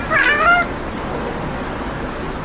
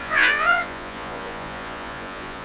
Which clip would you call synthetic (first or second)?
second